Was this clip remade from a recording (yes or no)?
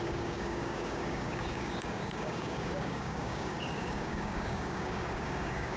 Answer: yes